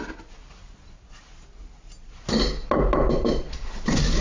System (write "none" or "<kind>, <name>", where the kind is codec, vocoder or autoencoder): none